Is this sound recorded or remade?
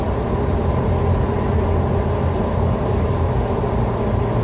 recorded